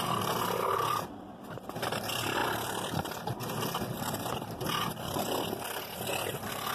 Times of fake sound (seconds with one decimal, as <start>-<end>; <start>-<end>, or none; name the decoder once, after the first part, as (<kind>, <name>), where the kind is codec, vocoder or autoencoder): none